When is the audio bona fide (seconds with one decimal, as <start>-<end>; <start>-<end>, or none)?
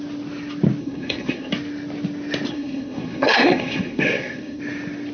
0.0-0.8; 1.5-2.5; 4.6-5.1